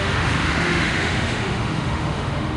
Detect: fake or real fake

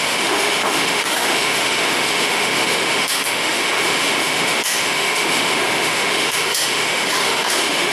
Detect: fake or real fake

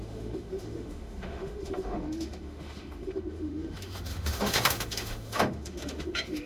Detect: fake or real fake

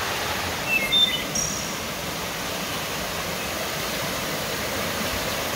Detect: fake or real real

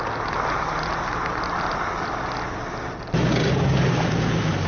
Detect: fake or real real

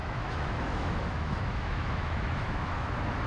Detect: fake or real fake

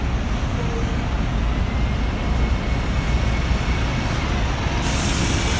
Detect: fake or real real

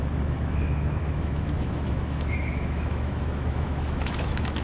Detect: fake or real fake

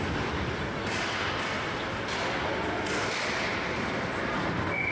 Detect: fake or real real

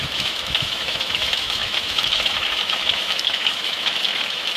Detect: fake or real fake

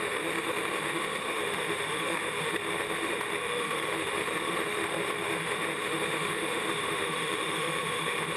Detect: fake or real fake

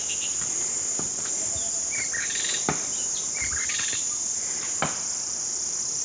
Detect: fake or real real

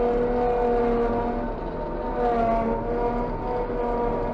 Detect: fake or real real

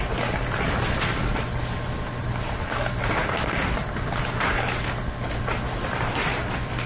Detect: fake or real real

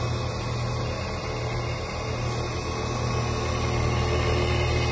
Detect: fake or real real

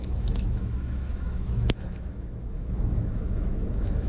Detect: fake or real fake